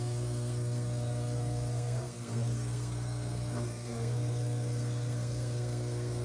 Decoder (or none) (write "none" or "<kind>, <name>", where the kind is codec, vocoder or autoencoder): codec, SNAC